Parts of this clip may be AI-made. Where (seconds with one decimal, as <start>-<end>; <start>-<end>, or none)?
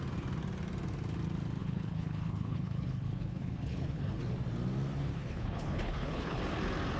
1.6-4.2; 5.1-6.4